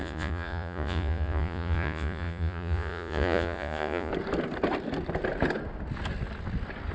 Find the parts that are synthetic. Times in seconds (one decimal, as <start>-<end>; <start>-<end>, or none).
0.0-4.1